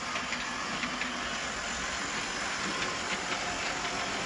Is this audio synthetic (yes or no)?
no